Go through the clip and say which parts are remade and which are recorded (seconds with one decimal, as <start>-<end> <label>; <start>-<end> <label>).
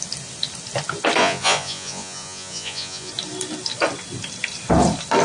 0.0-1.2 recorded; 1.2-3.1 remade; 3.1-5.2 recorded